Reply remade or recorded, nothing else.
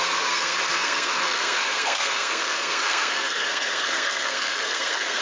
remade